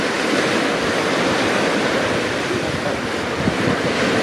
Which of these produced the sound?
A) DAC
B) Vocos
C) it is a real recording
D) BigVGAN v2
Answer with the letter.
D